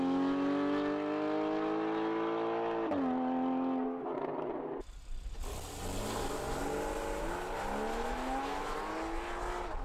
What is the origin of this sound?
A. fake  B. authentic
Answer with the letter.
B